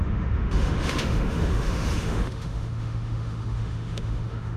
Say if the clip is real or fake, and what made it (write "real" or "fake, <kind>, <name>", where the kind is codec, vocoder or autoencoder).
fake, autoencoder, DAC-VAE